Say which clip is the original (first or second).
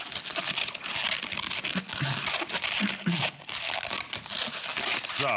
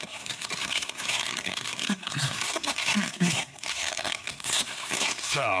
first